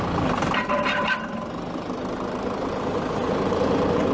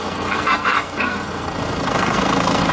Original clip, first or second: first